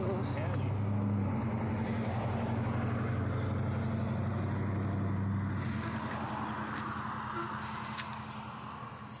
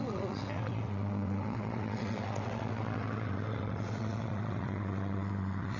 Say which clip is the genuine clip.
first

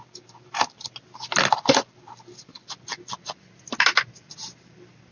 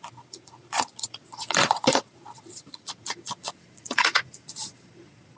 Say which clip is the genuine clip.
first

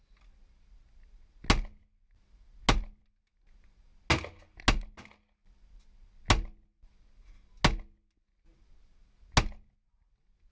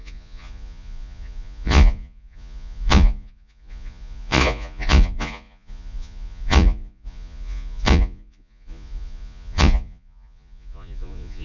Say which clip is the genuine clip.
first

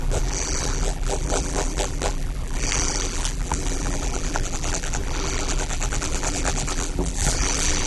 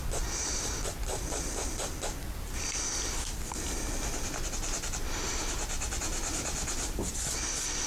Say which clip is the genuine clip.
second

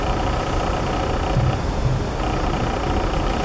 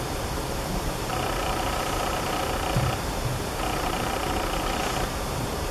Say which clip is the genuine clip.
first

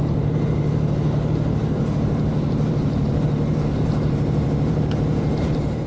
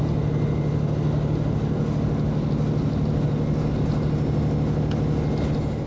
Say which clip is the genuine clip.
second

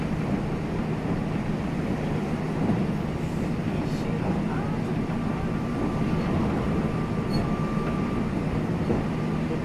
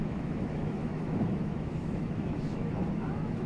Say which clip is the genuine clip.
first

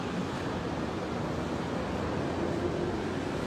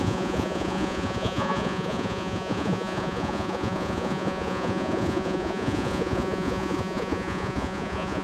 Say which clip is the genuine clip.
first